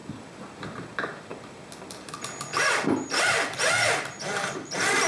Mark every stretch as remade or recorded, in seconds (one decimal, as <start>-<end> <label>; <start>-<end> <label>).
0.0-0.5 recorded; 0.5-5.1 remade